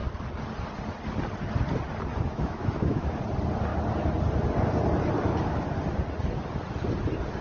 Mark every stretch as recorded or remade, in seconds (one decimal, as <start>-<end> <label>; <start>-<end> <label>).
0.0-2.1 recorded; 2.1-3.2 remade; 3.2-7.4 recorded